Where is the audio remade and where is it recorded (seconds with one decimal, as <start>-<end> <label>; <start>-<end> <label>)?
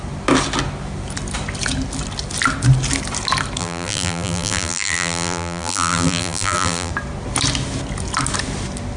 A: 0.0-3.6 recorded; 3.6-6.9 remade; 6.9-9.0 recorded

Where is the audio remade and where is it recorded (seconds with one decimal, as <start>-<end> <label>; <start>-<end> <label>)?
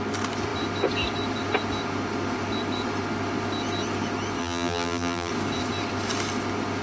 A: 0.0-4.4 recorded; 4.4-5.3 remade; 5.3-6.8 recorded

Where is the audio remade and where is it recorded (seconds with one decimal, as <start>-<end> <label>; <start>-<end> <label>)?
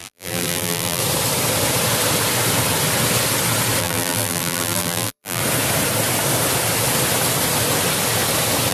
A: 0.0-1.0 remade; 1.0-3.8 recorded; 3.8-5.4 remade; 5.4-8.7 recorded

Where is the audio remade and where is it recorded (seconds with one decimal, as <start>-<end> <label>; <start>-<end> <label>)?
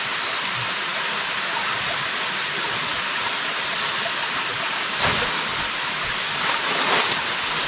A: 0.0-5.5 recorded; 5.5-6.0 remade; 6.0-7.7 recorded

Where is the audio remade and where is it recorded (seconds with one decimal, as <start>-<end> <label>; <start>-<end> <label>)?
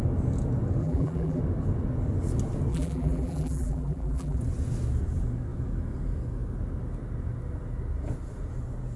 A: 0.0-0.8 recorded; 0.8-1.4 remade; 1.4-2.7 recorded; 2.7-4.4 remade; 4.4-9.0 recorded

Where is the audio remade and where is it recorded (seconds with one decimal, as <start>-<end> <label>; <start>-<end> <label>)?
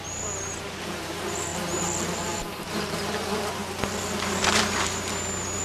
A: 0.0-1.5 recorded; 1.5-3.1 remade; 3.1-5.6 recorded